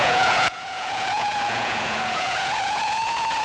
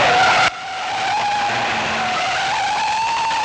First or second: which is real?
second